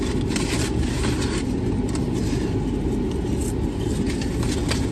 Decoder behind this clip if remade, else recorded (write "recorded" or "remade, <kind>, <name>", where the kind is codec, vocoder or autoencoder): recorded